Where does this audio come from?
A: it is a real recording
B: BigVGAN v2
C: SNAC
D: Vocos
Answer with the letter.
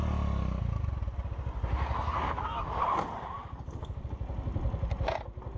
A